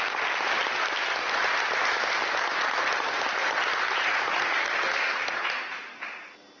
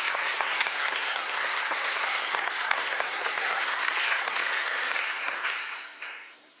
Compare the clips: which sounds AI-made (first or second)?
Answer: second